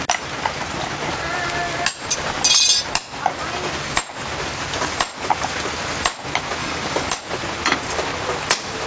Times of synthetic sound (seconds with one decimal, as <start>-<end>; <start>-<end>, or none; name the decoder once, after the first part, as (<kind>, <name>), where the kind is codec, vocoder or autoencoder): 6.6-7.2 (codec, DAC)

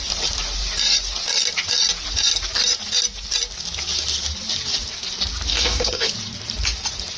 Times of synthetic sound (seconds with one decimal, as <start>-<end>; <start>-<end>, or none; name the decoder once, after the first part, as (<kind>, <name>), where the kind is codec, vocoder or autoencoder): 5.5-6.1 (codec, DAC)

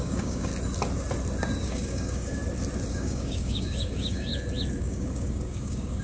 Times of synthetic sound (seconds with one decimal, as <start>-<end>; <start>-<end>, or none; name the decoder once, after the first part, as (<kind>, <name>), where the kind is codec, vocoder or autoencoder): 0.0-0.5 (codec, DAC); 1.6-2.4; 2.9-4.3; 4.8-6.0

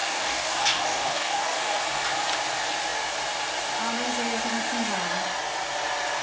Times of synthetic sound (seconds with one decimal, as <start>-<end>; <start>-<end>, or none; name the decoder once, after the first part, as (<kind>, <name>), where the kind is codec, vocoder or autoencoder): 0.0-1.8 (codec, DAC)

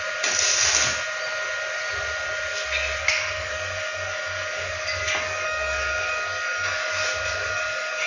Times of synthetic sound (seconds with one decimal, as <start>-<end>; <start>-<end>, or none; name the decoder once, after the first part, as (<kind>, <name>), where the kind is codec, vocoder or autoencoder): 3.0-8.1 (codec, DAC)

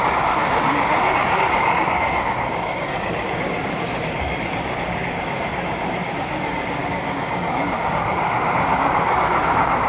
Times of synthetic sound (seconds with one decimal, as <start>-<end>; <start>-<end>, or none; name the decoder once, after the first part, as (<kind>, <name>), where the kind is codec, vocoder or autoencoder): 0.0-9.9 (codec, DAC)

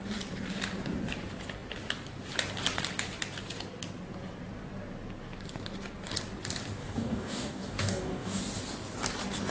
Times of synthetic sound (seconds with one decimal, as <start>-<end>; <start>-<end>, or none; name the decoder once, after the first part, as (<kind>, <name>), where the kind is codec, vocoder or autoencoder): 6.8-8.4 (codec, DAC)